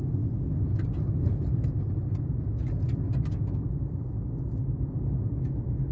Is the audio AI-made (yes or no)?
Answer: no